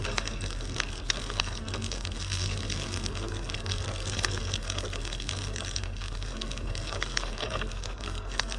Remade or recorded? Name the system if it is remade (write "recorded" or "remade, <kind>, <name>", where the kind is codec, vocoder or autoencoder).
remade, codec, SNAC